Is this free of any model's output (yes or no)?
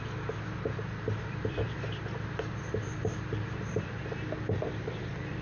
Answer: no